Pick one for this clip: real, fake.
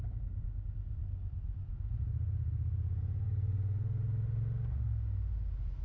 real